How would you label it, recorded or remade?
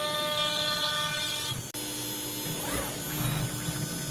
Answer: recorded